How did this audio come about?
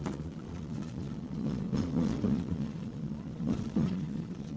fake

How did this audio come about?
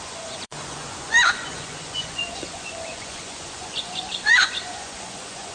fake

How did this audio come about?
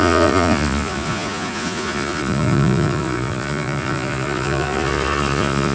fake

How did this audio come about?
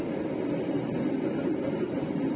real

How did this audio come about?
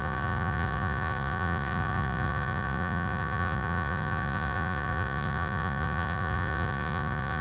fake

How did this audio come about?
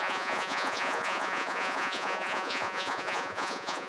fake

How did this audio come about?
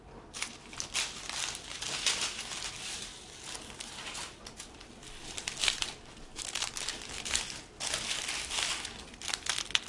real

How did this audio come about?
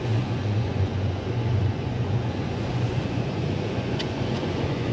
fake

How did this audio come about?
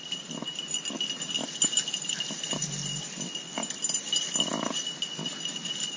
real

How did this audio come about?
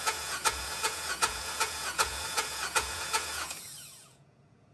fake